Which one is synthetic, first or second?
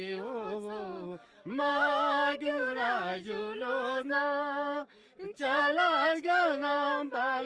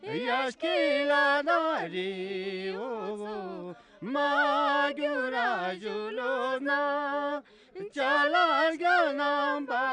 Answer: first